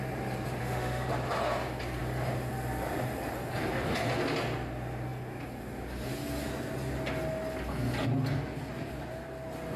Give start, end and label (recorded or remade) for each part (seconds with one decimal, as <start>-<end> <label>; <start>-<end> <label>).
0.0-0.6 recorded; 0.6-1.1 remade; 1.1-9.8 recorded